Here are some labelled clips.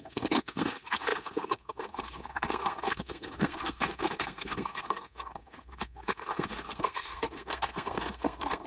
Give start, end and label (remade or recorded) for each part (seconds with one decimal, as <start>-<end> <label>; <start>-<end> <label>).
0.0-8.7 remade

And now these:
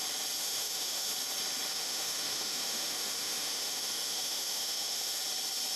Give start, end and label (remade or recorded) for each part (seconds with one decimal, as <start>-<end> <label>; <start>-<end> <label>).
0.0-0.4 recorded; 0.4-1.1 remade; 1.1-1.7 recorded; 1.7-5.2 remade; 5.2-5.8 recorded

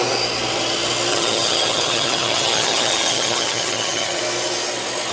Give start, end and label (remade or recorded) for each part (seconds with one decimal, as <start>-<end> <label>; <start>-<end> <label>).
0.0-1.1 recorded; 1.1-4.2 remade; 4.2-5.1 recorded

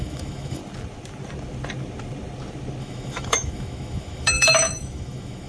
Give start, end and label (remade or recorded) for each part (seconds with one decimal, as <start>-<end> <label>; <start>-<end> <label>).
0.0-0.6 remade; 0.6-2.8 recorded; 2.8-5.5 remade

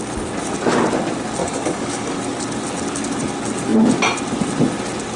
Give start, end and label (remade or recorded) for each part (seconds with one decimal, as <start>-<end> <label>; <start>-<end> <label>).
0.0-1.4 recorded; 1.4-2.2 remade; 2.2-5.2 recorded